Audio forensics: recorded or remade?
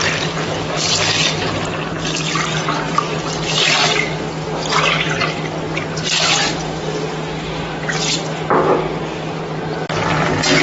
recorded